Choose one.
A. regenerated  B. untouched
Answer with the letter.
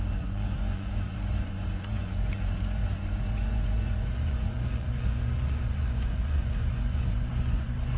A